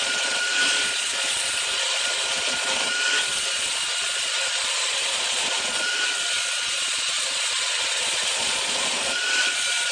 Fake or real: fake